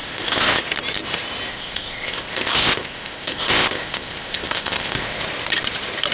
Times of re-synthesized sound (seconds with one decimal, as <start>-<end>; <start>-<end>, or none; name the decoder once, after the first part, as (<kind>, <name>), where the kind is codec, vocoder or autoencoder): 0.0-0.6 (codec, ZipCodec); 1.5-5.2